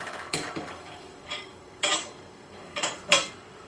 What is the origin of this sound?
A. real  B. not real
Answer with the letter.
B